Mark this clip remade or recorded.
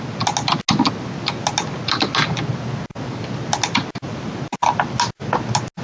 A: recorded